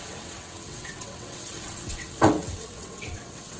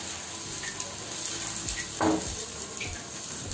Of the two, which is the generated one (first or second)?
first